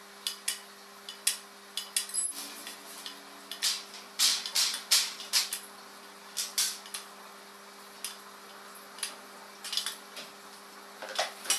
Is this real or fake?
real